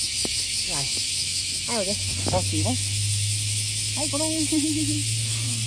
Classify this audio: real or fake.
fake